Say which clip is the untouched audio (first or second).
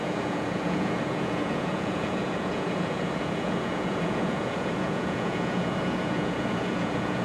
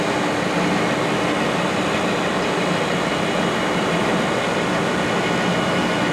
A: second